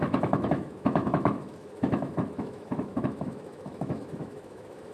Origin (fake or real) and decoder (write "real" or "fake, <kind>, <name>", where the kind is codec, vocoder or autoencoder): fake, autoencoder, DAC-VAE